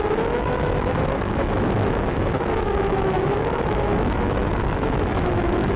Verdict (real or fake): fake